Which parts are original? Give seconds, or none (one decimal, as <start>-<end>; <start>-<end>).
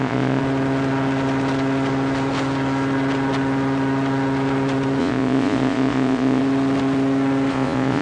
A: 0.4-5.0; 6.4-7.5